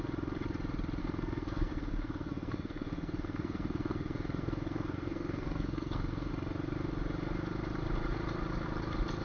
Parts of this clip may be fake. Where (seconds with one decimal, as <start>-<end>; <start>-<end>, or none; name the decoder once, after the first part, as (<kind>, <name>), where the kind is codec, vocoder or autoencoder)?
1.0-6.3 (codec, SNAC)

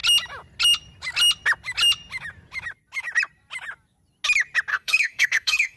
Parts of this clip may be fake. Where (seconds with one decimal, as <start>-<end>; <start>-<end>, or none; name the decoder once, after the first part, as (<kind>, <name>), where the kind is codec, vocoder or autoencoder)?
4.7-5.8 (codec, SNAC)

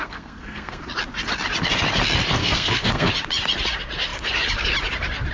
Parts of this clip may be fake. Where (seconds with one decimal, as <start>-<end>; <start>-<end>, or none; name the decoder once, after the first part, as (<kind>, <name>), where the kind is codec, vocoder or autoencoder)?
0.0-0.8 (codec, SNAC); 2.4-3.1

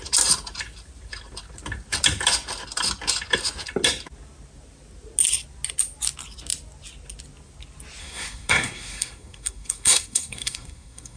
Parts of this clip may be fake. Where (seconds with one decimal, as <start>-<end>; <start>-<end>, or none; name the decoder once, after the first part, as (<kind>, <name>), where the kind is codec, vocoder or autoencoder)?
8.0-11.2 (codec, SNAC)